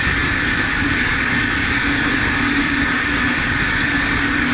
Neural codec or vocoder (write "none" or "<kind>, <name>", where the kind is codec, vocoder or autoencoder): codec, DAC